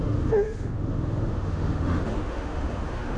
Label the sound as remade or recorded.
remade